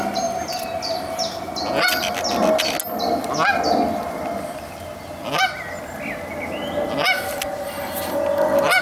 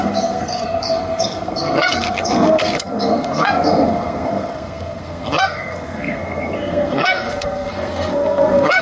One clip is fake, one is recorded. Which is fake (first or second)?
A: second